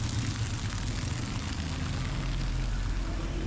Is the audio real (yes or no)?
yes